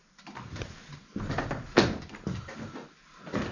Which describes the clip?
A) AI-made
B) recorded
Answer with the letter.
B